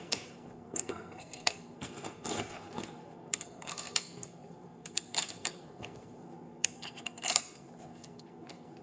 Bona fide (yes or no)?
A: no